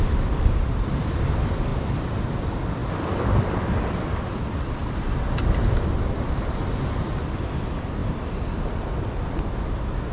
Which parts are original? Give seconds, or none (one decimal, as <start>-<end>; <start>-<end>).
0.0-10.1